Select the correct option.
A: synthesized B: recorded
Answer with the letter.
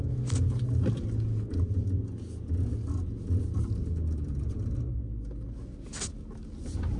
B